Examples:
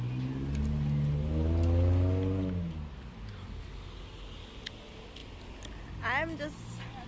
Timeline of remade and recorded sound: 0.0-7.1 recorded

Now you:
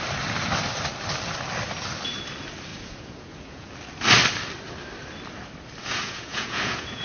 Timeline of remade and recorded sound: 0.0-2.7 recorded; 2.7-3.7 remade; 3.7-5.8 recorded; 5.8-7.0 remade

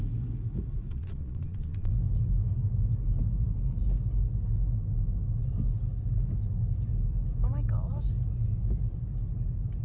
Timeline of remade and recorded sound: 0.0-0.9 recorded; 0.9-1.9 remade; 1.9-9.8 recorded

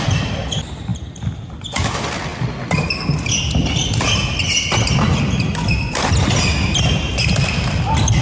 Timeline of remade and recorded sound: 0.0-8.2 recorded